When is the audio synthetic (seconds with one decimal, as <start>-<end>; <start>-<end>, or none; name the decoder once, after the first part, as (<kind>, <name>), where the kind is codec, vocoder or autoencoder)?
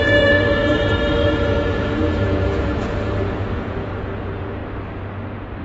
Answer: 0.0-4.6 (vocoder, Vocos)